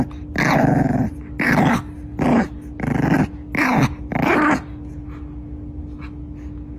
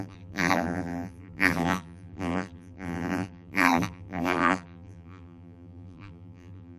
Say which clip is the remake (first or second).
second